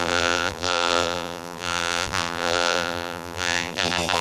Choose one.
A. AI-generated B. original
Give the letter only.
A